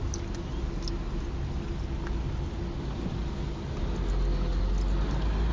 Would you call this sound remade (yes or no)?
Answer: no